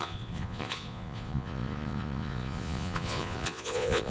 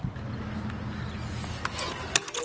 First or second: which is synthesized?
first